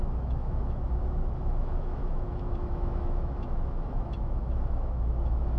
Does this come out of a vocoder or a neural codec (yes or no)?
yes